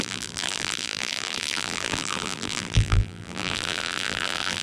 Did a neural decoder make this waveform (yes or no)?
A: yes